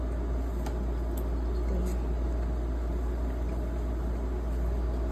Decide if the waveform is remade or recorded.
recorded